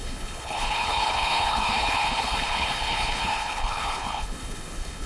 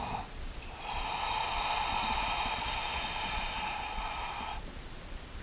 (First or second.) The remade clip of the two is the first